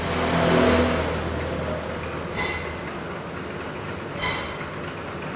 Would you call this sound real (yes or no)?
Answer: yes